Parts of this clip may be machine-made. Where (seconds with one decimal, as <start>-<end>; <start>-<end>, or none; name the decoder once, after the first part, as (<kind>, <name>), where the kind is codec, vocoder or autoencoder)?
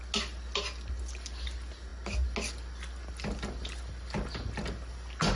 none